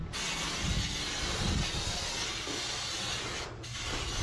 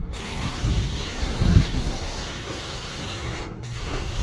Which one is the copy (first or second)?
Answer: second